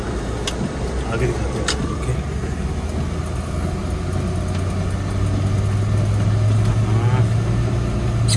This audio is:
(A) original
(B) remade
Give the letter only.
A